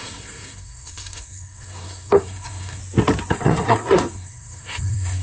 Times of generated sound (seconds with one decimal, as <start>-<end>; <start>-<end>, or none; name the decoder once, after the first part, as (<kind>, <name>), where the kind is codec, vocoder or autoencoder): 0.0-2.8 (codec, SNAC); 3.3-5.2